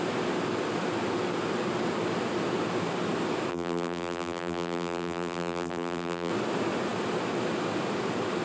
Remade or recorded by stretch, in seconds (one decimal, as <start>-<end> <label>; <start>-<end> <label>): 0.0-3.5 recorded; 3.5-6.3 remade; 6.3-8.4 recorded